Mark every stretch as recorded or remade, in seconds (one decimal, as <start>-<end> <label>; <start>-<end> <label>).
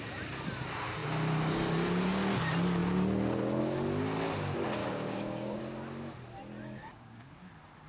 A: 0.0-4.8 recorded; 4.8-5.6 remade; 5.6-6.6 recorded; 6.6-7.3 remade; 7.3-7.9 recorded